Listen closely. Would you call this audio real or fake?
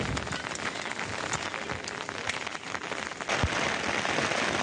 real